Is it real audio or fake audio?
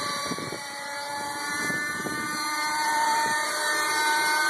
fake